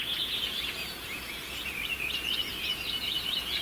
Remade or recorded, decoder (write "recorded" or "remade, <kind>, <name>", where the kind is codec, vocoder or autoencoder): remade, vocoder, Vocos